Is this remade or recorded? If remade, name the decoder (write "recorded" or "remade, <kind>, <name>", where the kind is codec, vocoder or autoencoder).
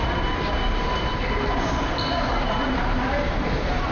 remade, vocoder, BigVGAN v2